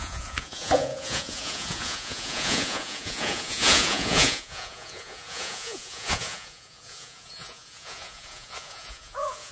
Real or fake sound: fake